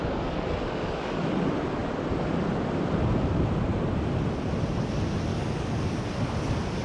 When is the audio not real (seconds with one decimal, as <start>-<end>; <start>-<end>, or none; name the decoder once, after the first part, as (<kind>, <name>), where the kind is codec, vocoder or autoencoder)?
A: 0.0-1.2 (codec, DAC); 5.3-6.0